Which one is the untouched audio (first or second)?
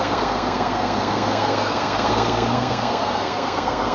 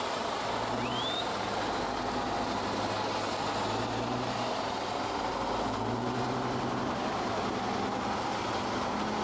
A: second